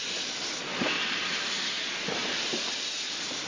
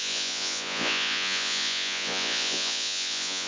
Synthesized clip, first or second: second